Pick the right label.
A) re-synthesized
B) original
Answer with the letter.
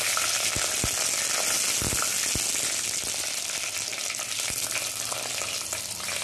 B